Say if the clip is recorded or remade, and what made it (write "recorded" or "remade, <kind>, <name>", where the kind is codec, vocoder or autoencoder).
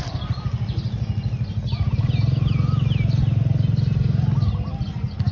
recorded